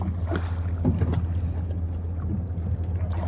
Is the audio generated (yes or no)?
no